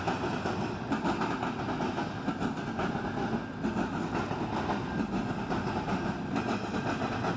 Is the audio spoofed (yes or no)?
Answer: no